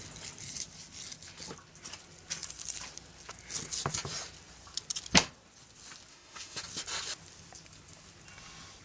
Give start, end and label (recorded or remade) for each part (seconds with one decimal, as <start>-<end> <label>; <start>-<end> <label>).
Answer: 0.0-6.1 recorded; 6.1-6.6 remade; 6.6-8.8 recorded